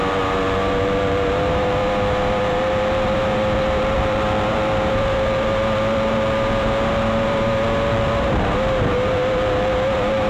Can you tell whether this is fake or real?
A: fake